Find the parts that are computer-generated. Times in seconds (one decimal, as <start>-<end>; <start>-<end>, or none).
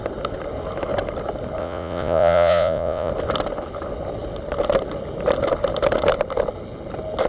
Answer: 1.6-3.1